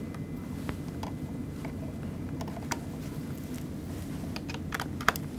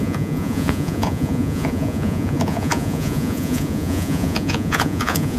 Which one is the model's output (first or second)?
second